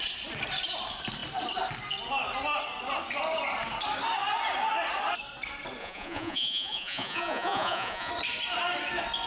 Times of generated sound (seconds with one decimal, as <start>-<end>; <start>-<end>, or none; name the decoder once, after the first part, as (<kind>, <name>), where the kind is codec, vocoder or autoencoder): 5.8-8.1 (vocoder, Vocos)